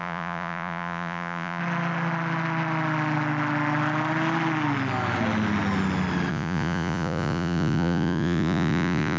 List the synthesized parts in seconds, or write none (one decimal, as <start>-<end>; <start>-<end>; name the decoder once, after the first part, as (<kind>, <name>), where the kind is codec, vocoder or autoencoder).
0.0-1.6 (vocoder, Vocos); 6.3-9.2